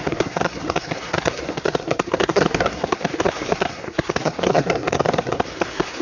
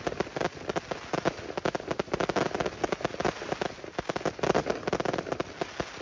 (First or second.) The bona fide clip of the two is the second